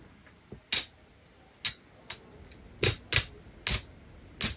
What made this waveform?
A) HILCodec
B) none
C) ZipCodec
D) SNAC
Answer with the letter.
B